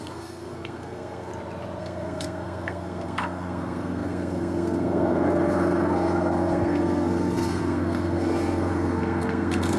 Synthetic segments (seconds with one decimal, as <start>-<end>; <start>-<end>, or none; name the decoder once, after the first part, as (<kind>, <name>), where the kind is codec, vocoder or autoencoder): 0.0-1.3 (codec, SNAC); 1.8-9.8